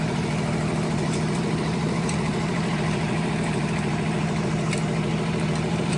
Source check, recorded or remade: remade